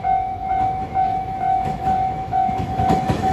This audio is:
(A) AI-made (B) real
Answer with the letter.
A